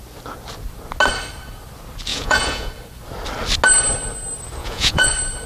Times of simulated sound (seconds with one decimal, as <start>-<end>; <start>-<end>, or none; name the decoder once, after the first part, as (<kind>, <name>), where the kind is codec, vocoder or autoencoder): 2.1-2.7 (vocoder, Vocos); 4.6-5.1